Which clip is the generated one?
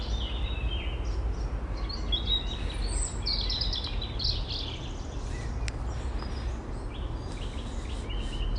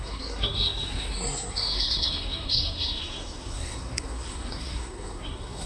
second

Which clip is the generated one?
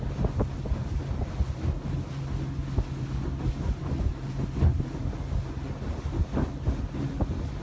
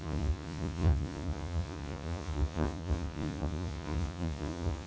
second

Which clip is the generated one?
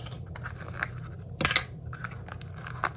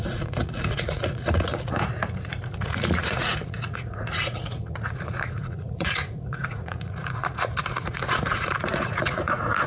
second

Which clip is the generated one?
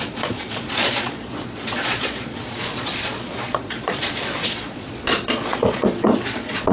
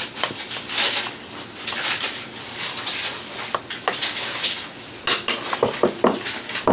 first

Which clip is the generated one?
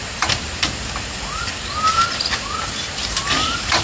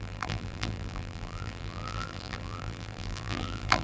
second